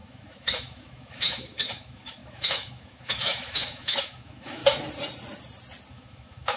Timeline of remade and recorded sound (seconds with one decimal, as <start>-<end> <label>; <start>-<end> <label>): 0.0-4.6 remade; 4.6-5.9 recorded; 5.9-6.6 remade